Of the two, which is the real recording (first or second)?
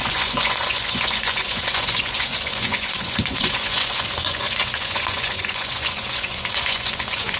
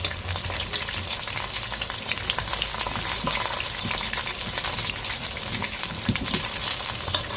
second